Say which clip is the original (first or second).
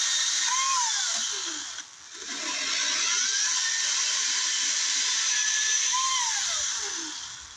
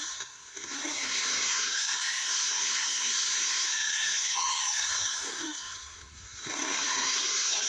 first